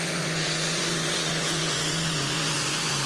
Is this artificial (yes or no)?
yes